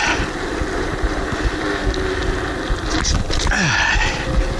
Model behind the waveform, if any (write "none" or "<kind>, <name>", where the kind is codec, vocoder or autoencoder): none